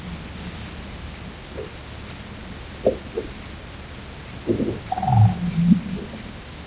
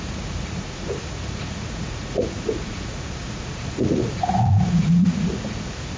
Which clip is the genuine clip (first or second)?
first